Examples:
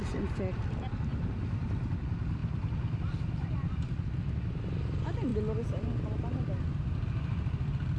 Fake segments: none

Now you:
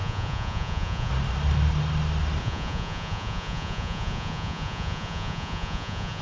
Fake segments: 0.0-1.1; 2.4-6.2

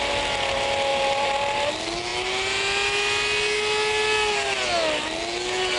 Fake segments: 0.9-1.7

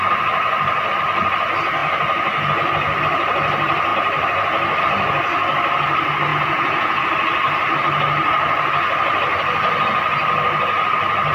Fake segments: 6.3-7.0

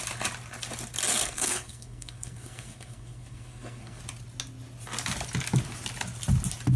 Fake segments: 1.1-4.0

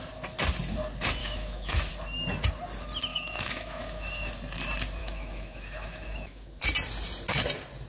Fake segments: 1.2-1.9; 3.1-4.3; 5.0-6.6

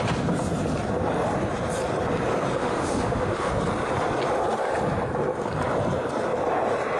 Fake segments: 2.6-3.5

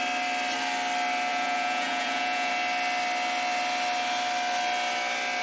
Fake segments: 1.3-2.5